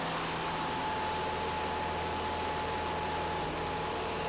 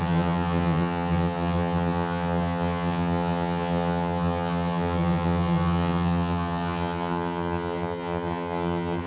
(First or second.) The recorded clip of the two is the first